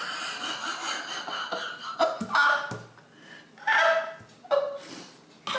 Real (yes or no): yes